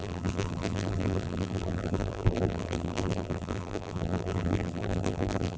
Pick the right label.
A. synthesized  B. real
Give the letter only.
A